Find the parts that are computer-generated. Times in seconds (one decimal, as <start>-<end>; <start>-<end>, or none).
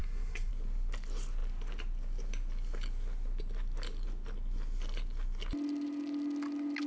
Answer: 0.0-0.5